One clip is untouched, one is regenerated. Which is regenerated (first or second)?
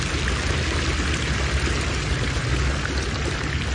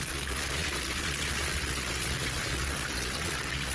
second